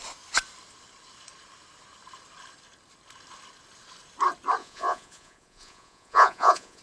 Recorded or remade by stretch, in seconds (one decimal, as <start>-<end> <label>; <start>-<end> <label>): 0.0-4.6 recorded; 4.6-6.8 remade